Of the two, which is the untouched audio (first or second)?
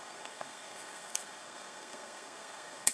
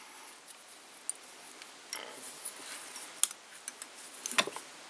second